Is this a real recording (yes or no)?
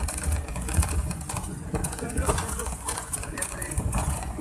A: no